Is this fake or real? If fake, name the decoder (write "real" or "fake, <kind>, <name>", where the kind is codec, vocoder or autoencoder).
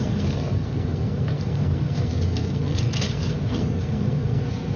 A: fake, codec, SNAC